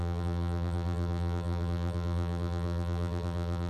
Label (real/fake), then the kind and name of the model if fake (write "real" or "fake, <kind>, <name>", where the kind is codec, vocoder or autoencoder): fake, vocoder, BigVGAN v2